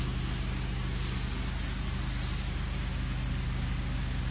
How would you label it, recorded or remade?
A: recorded